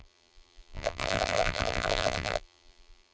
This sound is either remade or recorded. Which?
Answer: remade